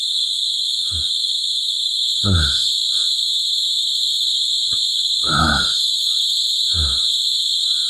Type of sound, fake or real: fake